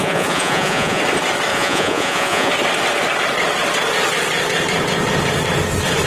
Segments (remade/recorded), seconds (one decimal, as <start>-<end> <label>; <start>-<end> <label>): 0.0-1.0 remade; 1.0-1.5 recorded; 1.5-2.5 remade; 2.5-6.1 recorded